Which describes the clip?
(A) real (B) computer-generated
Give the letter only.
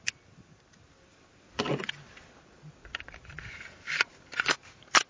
A